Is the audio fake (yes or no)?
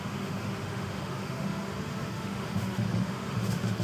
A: yes